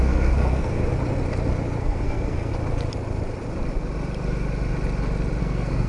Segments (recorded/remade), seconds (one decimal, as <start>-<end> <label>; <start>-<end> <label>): 0.0-0.8 remade; 0.8-1.8 recorded; 1.8-2.5 remade; 2.5-5.4 recorded; 5.4-5.9 remade